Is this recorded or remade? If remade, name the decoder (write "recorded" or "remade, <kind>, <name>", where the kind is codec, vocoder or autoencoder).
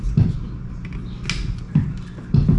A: recorded